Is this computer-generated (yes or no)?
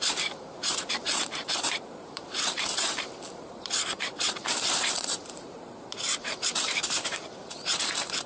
yes